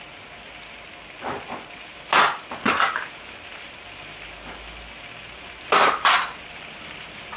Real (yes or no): yes